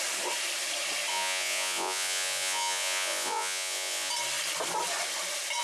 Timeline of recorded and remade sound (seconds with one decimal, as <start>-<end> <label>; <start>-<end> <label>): 0.0-1.1 recorded; 1.1-4.1 remade; 4.1-5.6 recorded